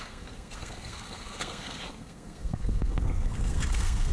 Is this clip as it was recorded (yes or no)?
no